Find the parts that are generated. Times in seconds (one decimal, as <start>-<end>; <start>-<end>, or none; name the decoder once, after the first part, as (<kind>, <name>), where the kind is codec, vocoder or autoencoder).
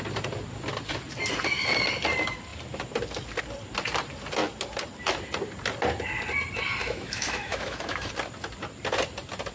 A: 6.8-8.1 (autoencoder, DAC-VAE)